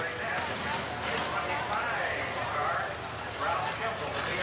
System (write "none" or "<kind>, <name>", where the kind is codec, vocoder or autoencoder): none